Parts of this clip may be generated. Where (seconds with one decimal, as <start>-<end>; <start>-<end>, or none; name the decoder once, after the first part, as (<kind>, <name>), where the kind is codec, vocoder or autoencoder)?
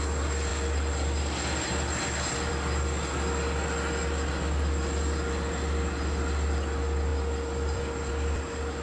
0.5-2.5 (vocoder, BigVGAN v2); 7.1-8.1